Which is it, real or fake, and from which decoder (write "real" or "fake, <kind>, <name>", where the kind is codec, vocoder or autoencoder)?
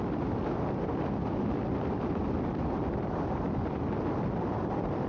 real